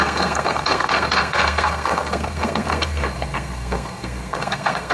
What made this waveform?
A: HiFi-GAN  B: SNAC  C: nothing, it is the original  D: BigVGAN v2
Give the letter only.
B